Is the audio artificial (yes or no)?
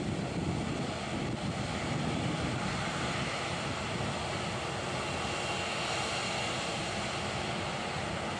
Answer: no